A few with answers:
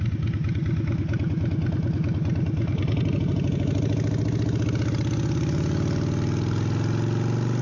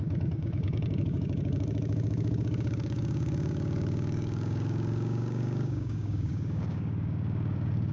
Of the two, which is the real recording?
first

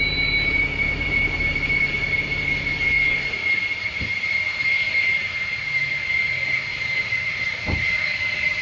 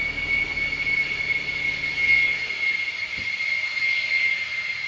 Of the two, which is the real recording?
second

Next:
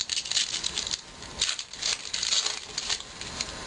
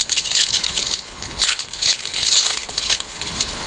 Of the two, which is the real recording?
first